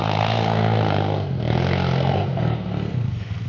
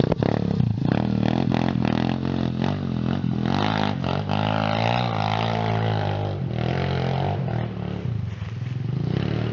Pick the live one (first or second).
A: second